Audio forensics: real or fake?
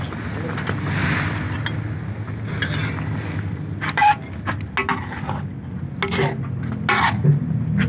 real